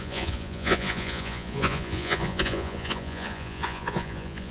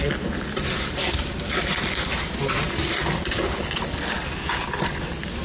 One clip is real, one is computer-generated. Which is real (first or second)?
second